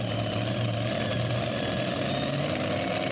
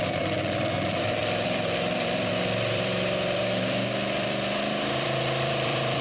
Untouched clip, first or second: first